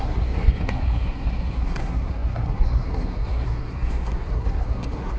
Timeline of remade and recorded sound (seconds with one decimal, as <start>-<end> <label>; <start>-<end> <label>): 0.0-5.2 remade